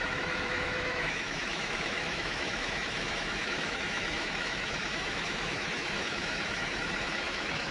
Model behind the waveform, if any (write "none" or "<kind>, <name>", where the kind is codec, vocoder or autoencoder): autoencoder, DAC-VAE